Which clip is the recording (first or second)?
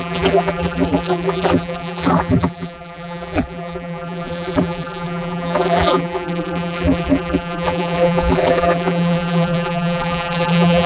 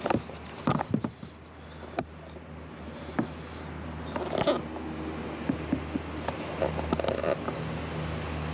second